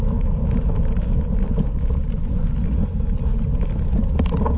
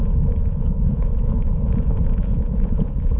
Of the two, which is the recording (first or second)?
first